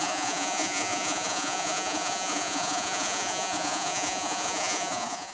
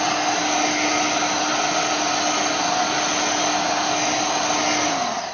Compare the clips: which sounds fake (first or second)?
first